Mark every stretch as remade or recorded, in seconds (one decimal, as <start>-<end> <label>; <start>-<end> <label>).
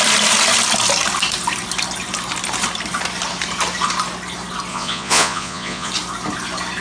0.0-4.7 recorded; 4.7-5.9 remade; 5.9-6.8 recorded